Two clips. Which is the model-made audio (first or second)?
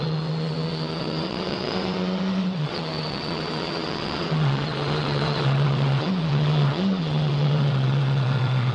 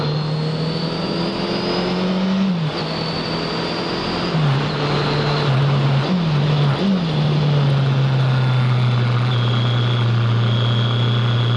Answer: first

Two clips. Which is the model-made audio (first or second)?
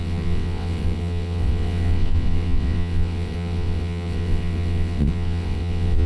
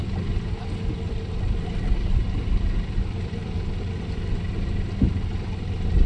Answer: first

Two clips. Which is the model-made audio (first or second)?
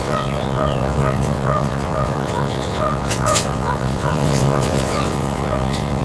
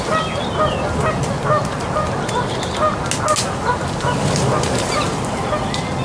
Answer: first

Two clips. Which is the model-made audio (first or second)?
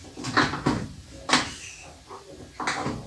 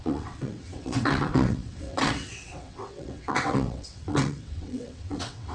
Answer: second